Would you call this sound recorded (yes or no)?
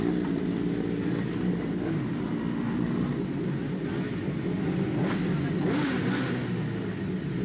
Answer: yes